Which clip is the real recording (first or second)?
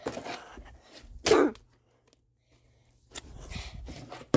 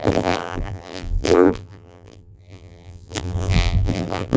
first